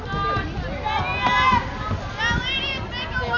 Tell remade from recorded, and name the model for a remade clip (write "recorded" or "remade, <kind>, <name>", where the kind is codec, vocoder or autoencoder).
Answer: recorded